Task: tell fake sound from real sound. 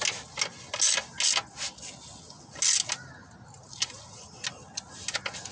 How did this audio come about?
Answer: real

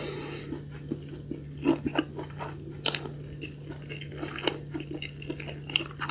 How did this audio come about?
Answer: real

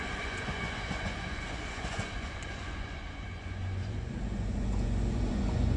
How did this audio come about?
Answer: fake